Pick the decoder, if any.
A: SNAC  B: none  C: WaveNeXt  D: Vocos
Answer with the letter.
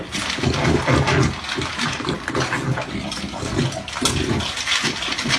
B